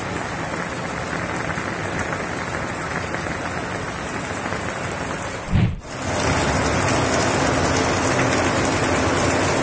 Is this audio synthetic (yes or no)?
no